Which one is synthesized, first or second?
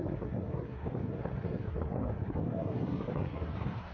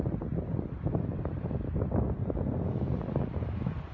first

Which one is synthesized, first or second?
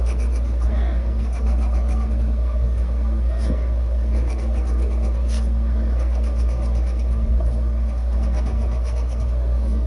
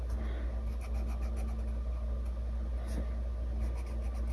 first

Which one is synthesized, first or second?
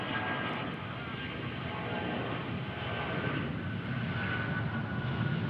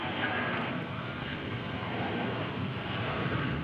second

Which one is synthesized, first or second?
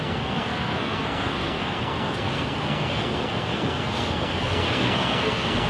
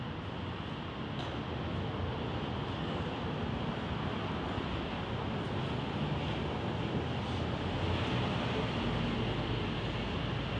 first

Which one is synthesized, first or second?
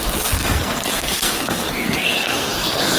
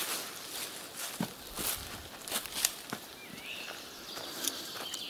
first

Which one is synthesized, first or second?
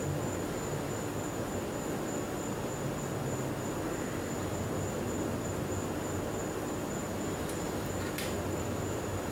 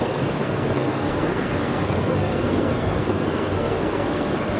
second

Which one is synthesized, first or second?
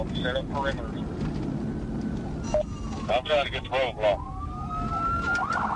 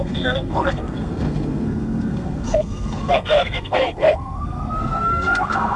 second